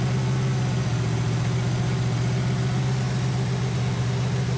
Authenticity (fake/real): real